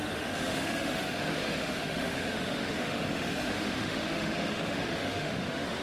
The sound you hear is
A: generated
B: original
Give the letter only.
A